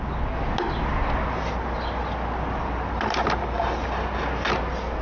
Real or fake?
real